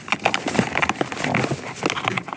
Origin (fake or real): real